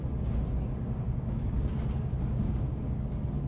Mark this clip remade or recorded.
remade